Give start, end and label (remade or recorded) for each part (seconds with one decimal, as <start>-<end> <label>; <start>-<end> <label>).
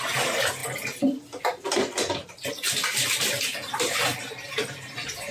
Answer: 0.0-5.3 recorded